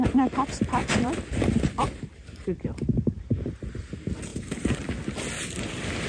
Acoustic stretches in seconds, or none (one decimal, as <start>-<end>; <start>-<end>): 0.0-0.8; 3.8-4.3; 4.9-6.1